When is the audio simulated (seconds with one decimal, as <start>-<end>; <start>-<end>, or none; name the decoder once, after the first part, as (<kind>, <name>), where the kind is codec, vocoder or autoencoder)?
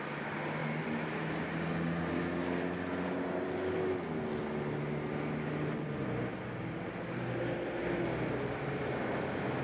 none